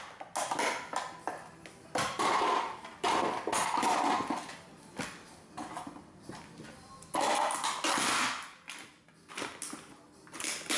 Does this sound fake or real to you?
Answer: real